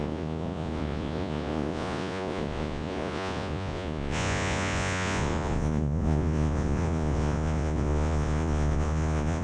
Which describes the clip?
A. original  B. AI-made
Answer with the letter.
B